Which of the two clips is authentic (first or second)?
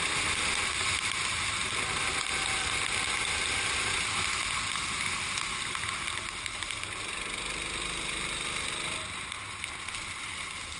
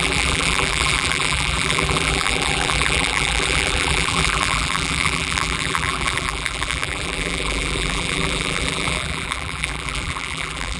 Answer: first